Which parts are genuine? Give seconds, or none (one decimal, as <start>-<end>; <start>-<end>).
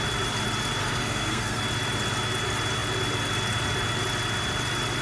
0.0-0.8; 1.6-5.0